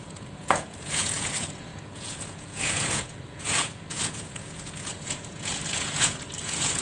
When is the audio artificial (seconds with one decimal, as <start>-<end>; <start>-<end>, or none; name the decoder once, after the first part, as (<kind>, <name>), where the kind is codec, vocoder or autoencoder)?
0.0-6.8 (vocoder, Vocos)